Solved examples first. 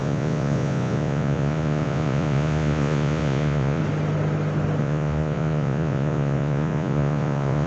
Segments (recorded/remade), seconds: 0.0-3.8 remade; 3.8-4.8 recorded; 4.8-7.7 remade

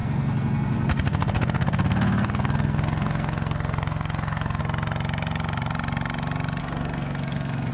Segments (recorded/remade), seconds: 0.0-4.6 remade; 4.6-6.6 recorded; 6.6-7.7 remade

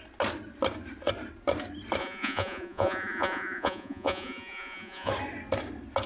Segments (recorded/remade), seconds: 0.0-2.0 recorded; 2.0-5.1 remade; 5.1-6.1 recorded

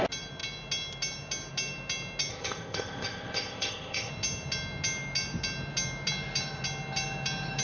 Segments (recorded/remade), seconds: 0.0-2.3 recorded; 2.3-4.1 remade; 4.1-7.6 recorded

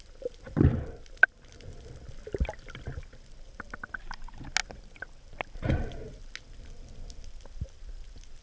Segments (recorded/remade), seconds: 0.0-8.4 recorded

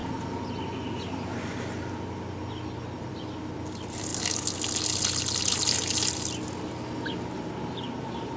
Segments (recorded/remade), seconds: 0.0-3.0 recorded; 3.0-4.1 remade; 4.1-8.0 recorded; 8.0-8.4 remade

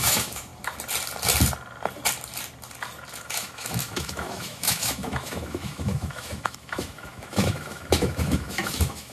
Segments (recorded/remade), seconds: 0.0-0.5 remade; 0.5-3.2 recorded; 3.2-9.1 remade

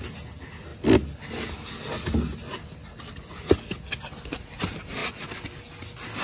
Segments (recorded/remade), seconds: 0.0-6.2 recorded